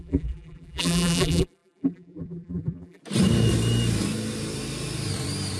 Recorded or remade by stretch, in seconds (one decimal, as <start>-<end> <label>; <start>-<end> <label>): 0.0-3.0 remade; 3.0-5.6 recorded